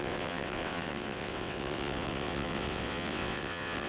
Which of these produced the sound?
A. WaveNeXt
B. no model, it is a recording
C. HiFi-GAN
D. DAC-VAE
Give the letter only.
A